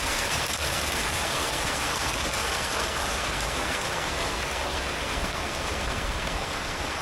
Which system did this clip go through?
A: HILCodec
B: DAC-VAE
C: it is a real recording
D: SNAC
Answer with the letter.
D